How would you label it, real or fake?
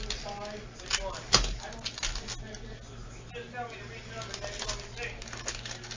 real